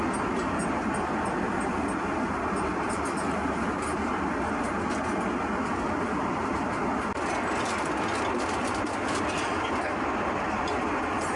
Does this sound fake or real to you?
real